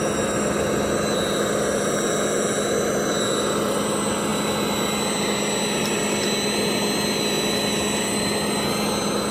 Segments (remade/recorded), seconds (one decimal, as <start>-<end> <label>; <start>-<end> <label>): 0.0-9.3 recorded